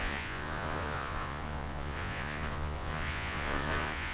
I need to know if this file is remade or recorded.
remade